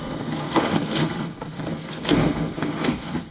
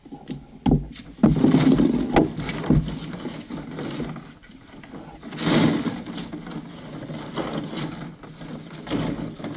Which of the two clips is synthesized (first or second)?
first